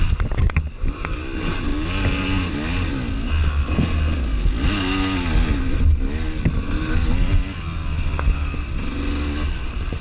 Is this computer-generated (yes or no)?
no